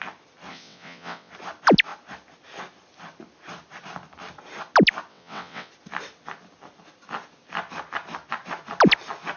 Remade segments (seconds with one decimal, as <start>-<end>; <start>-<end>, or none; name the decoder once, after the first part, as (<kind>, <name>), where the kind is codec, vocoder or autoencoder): 0.5-1.3 (vocoder, WaveNeXt); 5.1-5.7